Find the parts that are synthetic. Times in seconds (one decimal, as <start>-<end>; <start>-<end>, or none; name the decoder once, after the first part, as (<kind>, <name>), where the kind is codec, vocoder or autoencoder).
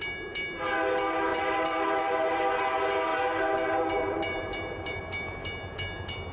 1.3-2.5 (vocoder, BigVGAN v2); 3.1-5.0